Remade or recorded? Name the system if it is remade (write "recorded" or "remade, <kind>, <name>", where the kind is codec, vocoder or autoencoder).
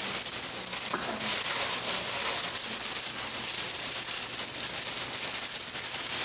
recorded